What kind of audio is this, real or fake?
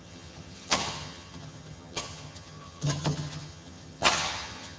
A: fake